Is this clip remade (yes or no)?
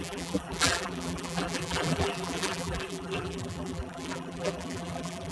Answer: yes